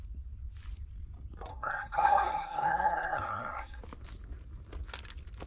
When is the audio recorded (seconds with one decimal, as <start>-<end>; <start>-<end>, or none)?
0.0-1.5; 3.8-5.5